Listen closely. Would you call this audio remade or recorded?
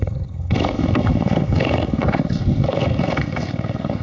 remade